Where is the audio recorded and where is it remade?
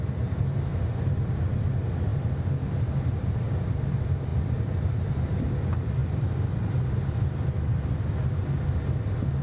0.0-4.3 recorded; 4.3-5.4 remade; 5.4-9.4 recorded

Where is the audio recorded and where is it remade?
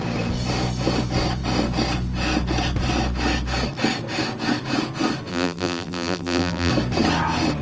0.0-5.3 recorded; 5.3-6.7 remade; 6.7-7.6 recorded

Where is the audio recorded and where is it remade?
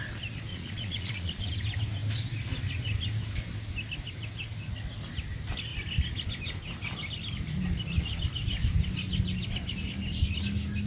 0.0-0.5 recorded; 0.5-1.5 remade; 1.5-10.9 recorded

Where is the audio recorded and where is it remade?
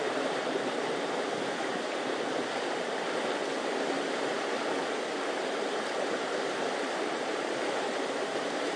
0.0-1.7 remade; 1.7-6.7 recorded; 6.7-8.8 remade